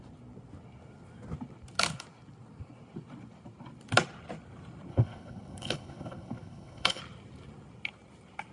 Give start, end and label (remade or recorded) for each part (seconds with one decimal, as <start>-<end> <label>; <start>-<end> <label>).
0.0-4.9 recorded; 4.9-7.0 remade; 7.0-8.5 recorded